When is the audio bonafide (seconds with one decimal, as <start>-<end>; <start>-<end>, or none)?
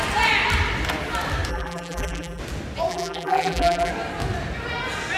0.0-1.5; 2.4-2.9; 3.9-5.2